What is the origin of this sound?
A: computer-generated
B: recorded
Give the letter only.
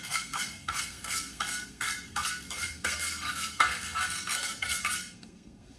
A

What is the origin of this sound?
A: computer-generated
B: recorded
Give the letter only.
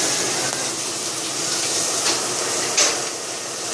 B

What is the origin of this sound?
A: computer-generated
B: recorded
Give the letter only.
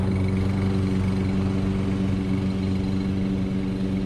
B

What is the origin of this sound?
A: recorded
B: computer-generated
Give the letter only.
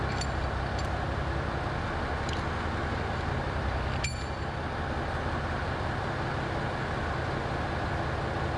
A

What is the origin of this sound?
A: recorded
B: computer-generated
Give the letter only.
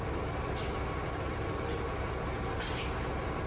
A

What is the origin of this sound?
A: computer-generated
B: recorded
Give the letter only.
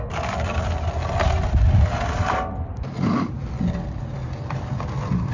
B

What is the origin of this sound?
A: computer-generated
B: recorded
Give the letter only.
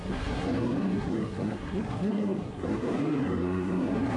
A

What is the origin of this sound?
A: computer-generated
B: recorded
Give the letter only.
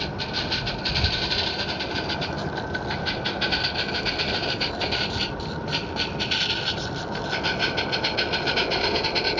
B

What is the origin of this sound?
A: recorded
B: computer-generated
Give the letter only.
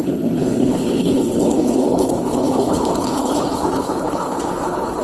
B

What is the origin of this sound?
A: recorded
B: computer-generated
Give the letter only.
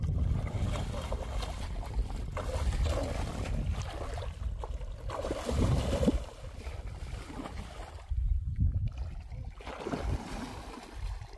A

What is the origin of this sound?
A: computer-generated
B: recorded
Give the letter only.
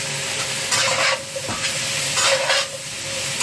B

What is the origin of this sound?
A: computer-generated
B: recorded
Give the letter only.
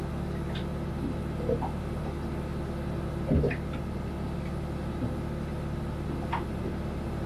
B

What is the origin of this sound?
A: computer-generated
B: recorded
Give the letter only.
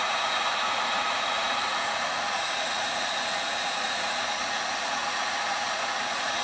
A